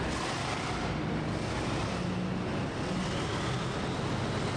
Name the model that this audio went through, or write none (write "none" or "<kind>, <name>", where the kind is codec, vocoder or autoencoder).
none